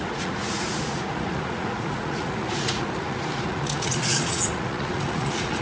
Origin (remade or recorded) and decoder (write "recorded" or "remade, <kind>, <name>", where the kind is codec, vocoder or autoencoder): remade, vocoder, Vocos